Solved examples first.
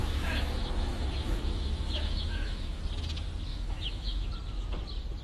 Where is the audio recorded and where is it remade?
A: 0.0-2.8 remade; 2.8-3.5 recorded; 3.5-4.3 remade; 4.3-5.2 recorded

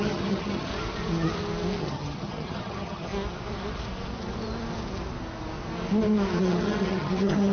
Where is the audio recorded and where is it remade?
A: 0.0-0.7 remade; 0.7-1.8 recorded; 1.8-3.1 remade; 3.1-6.4 recorded; 6.4-7.5 remade

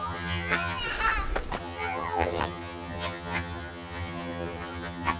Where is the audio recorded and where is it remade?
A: 0.0-0.8 remade; 0.8-1.6 recorded; 1.6-5.2 remade

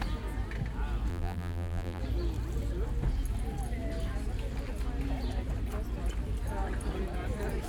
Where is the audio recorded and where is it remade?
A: 0.0-1.1 recorded; 1.1-2.0 remade; 2.0-7.7 recorded

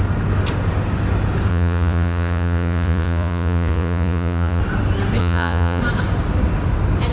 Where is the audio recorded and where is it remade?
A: 0.0-1.5 recorded; 1.5-4.6 remade; 4.6-5.2 recorded; 5.2-5.8 remade; 5.8-7.1 recorded

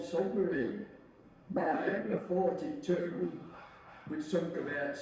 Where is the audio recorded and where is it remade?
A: 0.0-0.5 recorded; 0.5-2.3 remade; 2.3-3.0 recorded; 3.0-4.1 remade; 4.1-5.0 recorded

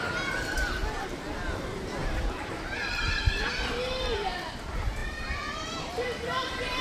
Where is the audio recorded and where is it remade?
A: 0.0-6.8 remade